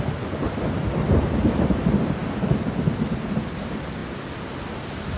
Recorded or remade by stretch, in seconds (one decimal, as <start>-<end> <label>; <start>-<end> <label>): 0.0-5.2 recorded